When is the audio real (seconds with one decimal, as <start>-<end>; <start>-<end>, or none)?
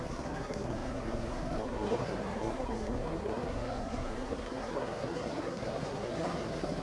none